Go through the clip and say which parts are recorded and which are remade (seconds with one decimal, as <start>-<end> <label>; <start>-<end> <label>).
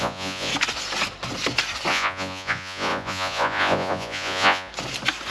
0.0-0.5 remade; 0.5-1.9 recorded; 1.9-4.7 remade; 4.7-5.3 recorded